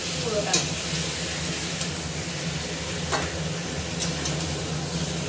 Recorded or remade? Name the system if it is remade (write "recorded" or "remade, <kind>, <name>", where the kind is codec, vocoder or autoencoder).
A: recorded